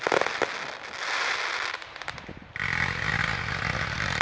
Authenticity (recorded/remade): recorded